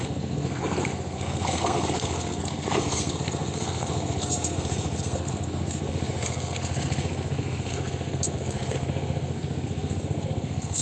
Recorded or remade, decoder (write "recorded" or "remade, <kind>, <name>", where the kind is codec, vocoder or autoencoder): remade, codec, SNAC